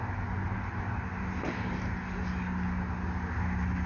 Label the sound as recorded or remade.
recorded